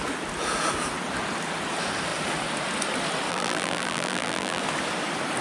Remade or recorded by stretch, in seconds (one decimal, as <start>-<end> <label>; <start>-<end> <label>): 0.0-3.3 recorded; 3.3-4.6 remade; 4.6-5.4 recorded